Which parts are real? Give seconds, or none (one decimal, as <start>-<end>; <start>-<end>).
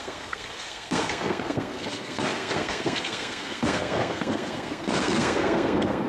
none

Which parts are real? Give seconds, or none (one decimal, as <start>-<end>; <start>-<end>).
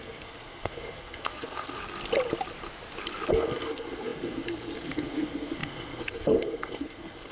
1.8-3.3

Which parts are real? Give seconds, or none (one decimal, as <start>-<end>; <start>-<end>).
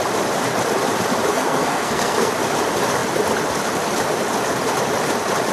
0.0-1.3; 2.3-5.5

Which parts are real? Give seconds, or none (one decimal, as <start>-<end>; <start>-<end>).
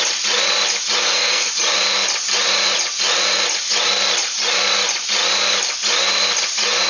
0.0-1.0; 1.5-6.9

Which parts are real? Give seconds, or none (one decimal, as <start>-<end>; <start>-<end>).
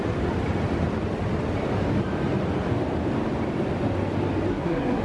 0.0-4.5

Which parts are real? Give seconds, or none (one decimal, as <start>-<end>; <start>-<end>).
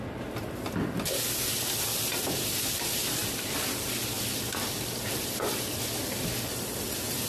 0.0-7.3